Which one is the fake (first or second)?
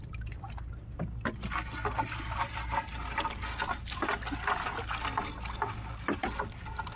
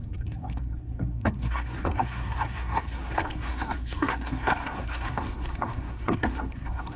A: second